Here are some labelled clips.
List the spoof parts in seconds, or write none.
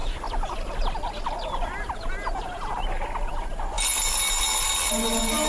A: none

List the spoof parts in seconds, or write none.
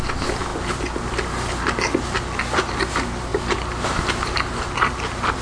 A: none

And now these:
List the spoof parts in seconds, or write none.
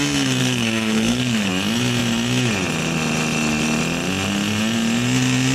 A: 0.4-1.5 (codec, SNAC)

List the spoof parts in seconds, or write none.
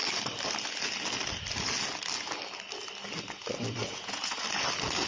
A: 3.8-4.4 (vocoder, Vocos)